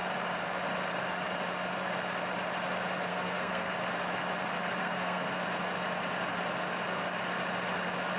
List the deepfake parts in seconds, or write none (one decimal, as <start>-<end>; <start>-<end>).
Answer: 3.1-3.7; 4.8-5.4